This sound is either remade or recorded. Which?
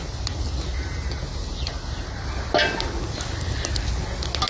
recorded